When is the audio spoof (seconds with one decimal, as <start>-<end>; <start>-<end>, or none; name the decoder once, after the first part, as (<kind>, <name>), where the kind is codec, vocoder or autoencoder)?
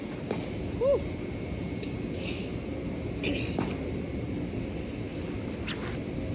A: none